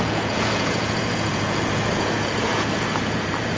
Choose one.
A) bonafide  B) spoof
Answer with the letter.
B